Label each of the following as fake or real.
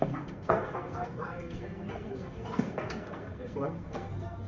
fake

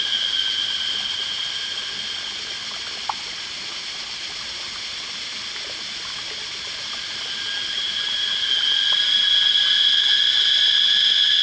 real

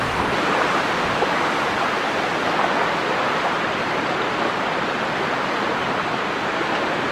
real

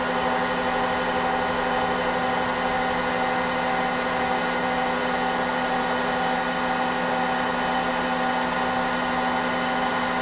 real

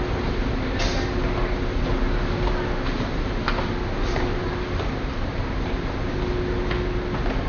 real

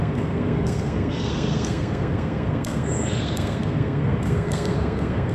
fake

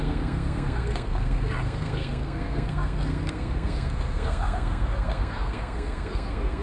fake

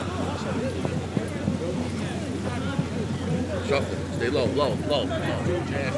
real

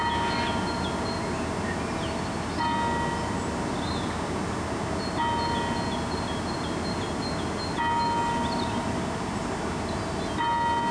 real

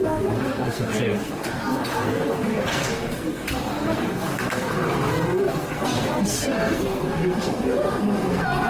fake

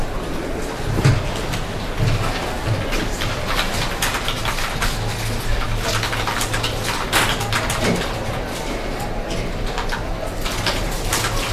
real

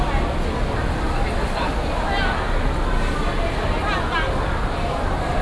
real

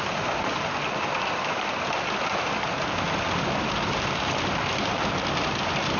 real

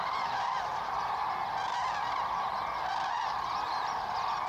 real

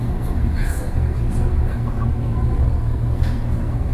fake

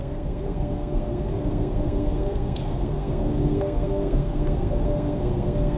fake